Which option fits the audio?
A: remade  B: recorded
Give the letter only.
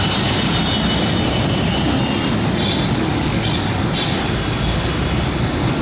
B